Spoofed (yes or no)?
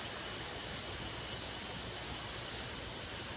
no